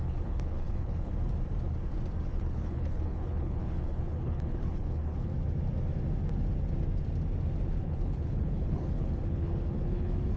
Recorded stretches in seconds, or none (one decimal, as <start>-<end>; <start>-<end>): 1.1-2.2; 5.3-7.8